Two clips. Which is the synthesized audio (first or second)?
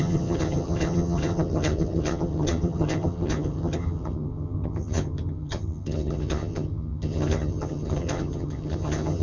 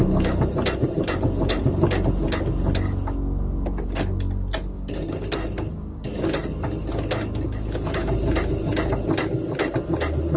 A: first